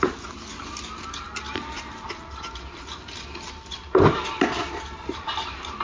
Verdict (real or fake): fake